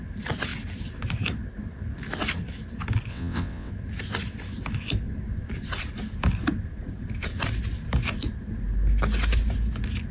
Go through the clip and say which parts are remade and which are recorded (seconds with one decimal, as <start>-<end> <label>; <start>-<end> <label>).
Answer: 0.0-3.1 recorded; 3.1-3.7 remade; 3.7-10.1 recorded